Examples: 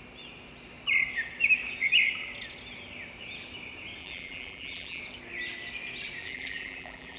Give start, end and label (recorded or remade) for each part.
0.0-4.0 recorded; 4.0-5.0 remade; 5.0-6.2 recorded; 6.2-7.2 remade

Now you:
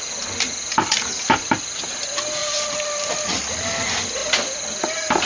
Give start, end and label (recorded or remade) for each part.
0.0-2.4 recorded; 2.4-3.6 remade; 3.6-5.3 recorded